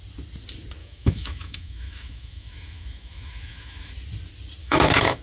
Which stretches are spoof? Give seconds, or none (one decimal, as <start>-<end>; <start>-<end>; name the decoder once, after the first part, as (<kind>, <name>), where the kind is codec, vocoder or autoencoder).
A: 0.8-3.9 (autoencoder, DAC-VAE); 4.6-5.2